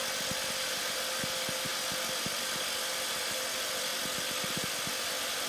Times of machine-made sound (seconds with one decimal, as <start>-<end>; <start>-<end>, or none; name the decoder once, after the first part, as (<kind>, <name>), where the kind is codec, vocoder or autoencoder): none